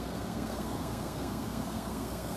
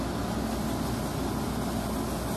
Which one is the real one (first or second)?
second